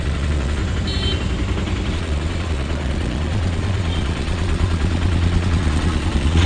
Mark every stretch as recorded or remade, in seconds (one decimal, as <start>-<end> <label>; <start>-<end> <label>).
0.0-0.6 remade; 0.6-1.9 recorded; 1.9-6.5 remade